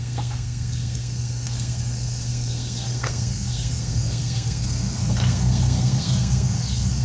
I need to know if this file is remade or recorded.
remade